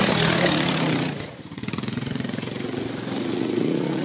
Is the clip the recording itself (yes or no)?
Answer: no